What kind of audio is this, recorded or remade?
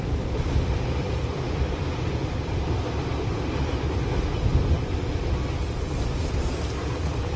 recorded